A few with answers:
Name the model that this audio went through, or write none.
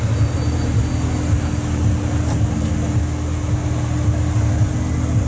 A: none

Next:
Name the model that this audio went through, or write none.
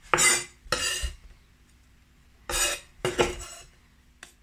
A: none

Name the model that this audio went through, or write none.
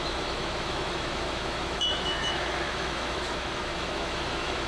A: autoencoder, DAC-VAE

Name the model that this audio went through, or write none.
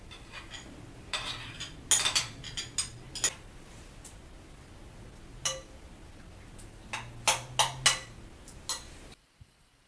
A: none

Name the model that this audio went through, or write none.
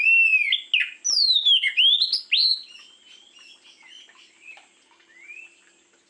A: none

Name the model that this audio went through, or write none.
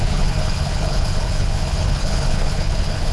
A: codec, HILCodec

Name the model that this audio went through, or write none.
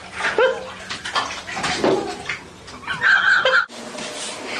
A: none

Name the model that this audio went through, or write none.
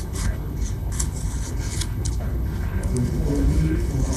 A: codec, HILCodec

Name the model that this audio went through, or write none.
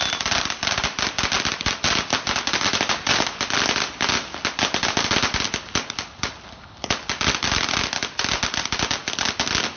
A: none